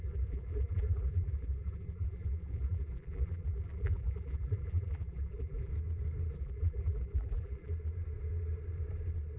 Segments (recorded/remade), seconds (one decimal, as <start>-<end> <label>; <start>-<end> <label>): 0.0-5.7 remade; 5.7-6.3 recorded; 6.3-7.7 remade; 7.7-9.4 recorded